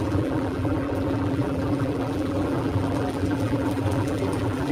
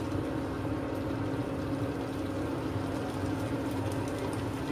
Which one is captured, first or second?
second